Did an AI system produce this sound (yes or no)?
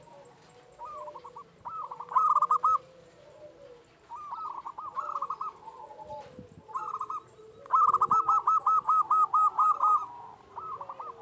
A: no